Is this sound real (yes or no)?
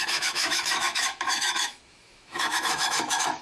no